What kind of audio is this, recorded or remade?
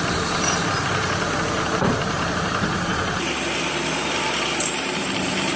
remade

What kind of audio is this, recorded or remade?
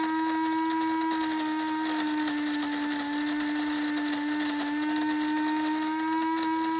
recorded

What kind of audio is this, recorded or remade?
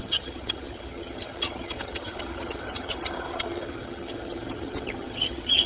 remade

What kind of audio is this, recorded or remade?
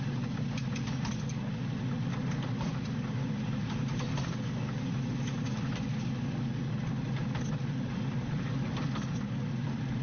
recorded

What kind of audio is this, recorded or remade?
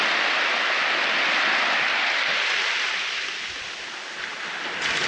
recorded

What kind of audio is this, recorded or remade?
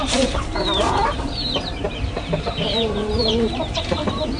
remade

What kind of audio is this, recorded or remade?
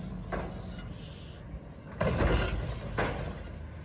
recorded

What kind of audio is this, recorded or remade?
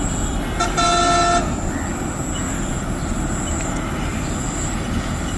recorded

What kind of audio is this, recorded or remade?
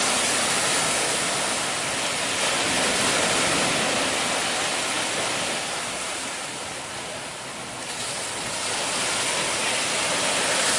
recorded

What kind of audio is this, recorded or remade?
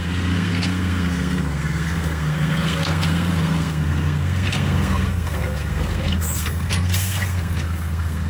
remade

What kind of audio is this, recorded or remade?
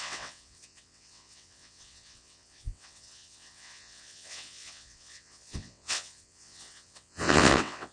remade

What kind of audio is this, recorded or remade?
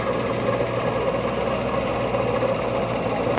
recorded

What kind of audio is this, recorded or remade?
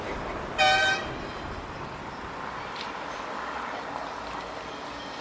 recorded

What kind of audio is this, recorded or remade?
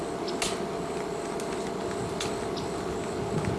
recorded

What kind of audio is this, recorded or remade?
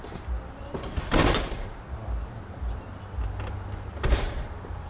recorded